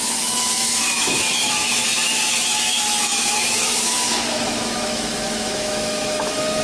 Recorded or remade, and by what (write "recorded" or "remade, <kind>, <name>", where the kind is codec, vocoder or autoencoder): remade, autoencoder, DAC-VAE